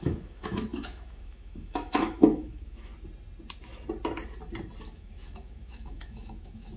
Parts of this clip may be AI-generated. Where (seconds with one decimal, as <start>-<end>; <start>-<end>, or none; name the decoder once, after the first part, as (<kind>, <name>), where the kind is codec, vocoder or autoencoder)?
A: 0.0-2.9 (autoencoder, DAC-VAE); 4.8-6.8